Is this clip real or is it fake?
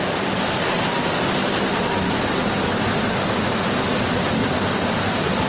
real